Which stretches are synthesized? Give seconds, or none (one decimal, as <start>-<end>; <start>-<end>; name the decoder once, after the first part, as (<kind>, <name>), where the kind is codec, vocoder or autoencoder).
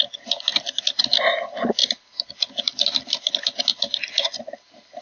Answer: 1.8-3.3 (vocoder, BigVGAN v2); 3.7-5.0